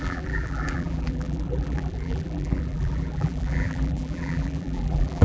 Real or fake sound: fake